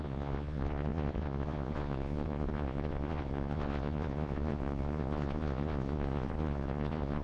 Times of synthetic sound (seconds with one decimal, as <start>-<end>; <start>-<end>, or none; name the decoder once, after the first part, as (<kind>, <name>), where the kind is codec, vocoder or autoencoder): 0.0-7.2 (vocoder, Vocos)